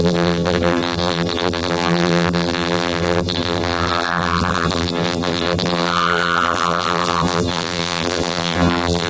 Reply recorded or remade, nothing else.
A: remade